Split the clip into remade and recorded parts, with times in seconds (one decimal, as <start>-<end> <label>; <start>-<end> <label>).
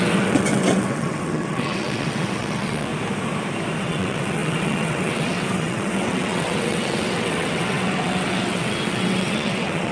0.0-2.9 remade; 2.9-3.8 recorded; 3.8-9.9 remade